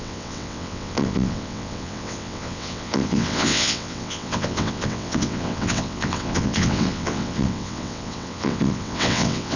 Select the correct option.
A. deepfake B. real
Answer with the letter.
A